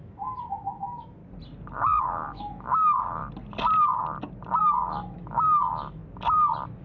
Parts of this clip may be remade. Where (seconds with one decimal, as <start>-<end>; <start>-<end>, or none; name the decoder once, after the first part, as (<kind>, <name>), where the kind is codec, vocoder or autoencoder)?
0.0-1.2 (autoencoder, DAC-VAE); 2.0-3.2; 4.6-6.0